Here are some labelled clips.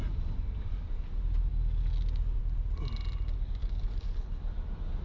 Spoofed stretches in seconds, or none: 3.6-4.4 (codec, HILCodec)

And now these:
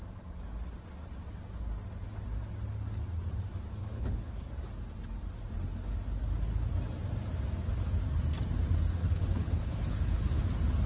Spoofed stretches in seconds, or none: 3.8-4.4 (codec, HILCodec); 9.0-10.4